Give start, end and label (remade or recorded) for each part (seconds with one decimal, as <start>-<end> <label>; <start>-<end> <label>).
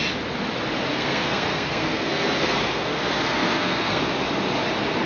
0.0-0.9 recorded; 0.9-4.0 remade; 4.0-5.1 recorded